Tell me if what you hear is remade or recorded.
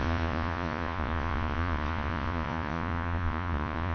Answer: remade